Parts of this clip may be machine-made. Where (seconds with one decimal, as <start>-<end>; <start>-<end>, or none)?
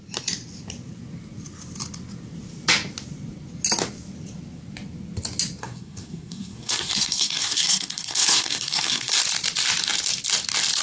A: 5.6-9.1